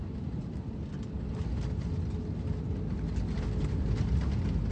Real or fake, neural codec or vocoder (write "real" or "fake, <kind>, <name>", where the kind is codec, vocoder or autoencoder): real